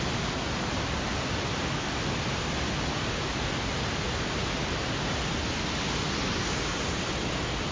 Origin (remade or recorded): recorded